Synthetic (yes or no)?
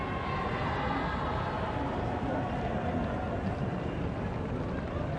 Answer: no